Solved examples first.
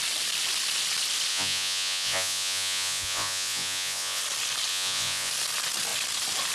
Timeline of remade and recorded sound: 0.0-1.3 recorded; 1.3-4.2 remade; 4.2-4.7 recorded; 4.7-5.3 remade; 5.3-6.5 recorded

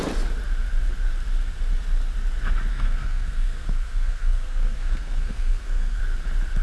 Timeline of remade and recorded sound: 0.0-2.7 recorded; 2.7-6.0 remade; 6.0-6.6 recorded

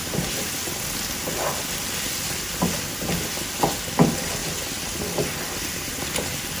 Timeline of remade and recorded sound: 0.0-6.6 recorded

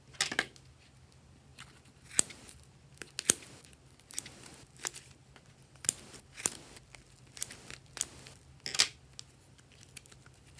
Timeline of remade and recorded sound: 0.0-10.6 recorded

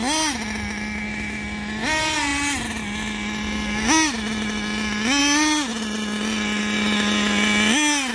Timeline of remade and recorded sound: 0.0-8.1 recorded

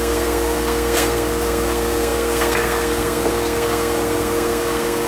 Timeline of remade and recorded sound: 0.0-5.1 remade

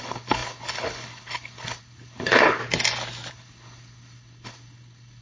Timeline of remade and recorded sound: 0.0-2.6 remade; 2.6-3.3 recorded; 3.3-5.2 remade